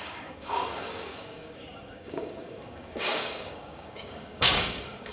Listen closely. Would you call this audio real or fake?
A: fake